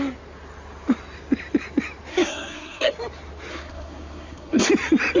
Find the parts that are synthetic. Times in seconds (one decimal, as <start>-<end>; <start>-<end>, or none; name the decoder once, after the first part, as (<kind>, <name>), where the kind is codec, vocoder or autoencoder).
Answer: 2.1-2.9 (codec, SNAC); 3.5-4.7